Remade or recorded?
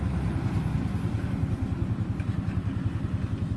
recorded